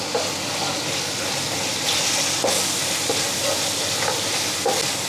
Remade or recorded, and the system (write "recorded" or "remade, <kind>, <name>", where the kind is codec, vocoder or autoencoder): recorded